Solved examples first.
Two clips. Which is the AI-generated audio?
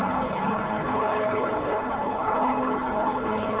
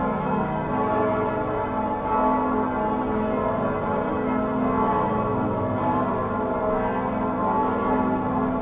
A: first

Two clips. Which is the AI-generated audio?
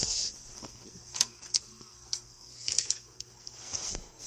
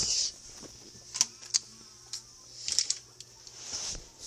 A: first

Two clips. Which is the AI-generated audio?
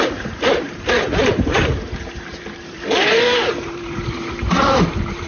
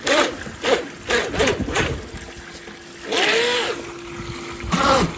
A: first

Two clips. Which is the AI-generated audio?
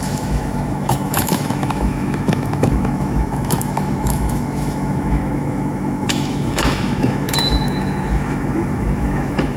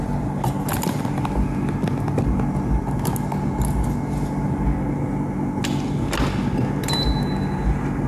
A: first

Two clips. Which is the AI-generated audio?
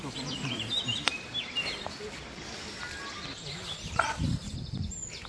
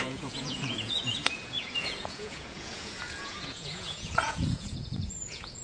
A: second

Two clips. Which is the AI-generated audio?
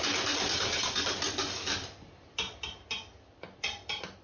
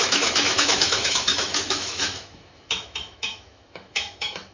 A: second